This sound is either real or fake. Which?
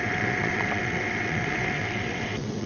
fake